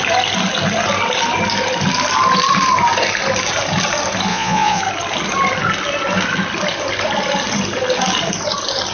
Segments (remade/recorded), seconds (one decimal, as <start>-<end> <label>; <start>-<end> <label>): 0.0-4.3 recorded; 4.3-4.8 remade; 4.8-8.9 recorded